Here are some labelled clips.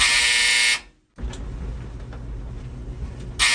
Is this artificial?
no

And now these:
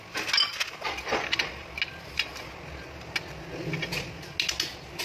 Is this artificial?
no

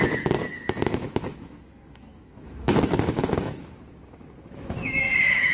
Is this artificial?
yes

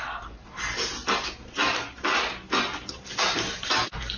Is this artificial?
no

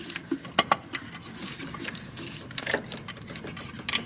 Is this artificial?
no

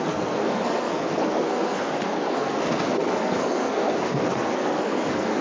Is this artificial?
yes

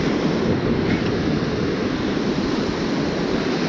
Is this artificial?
no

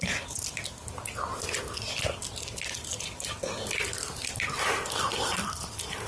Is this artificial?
no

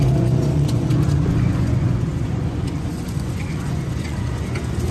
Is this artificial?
yes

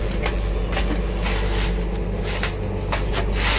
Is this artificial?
no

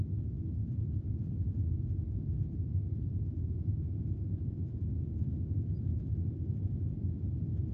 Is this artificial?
no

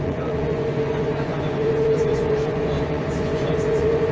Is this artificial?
yes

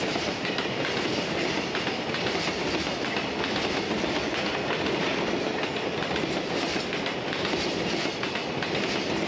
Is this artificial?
no